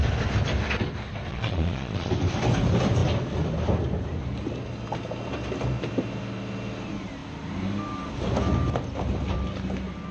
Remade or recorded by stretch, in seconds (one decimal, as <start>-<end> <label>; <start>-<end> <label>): 0.0-1.3 recorded; 1.3-2.1 remade; 2.1-10.1 recorded